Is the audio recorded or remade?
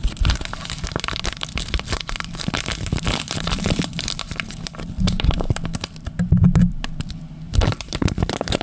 remade